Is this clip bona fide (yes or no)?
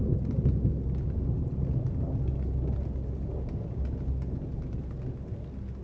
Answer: yes